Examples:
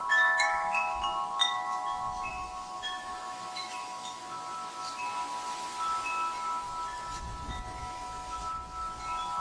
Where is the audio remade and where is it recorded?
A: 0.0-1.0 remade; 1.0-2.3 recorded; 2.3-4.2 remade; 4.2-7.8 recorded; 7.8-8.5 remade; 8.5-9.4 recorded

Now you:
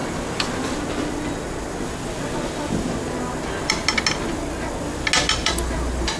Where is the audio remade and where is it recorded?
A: 0.0-5.4 recorded; 5.4-6.2 remade